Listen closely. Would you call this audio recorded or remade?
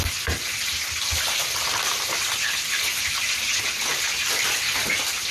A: recorded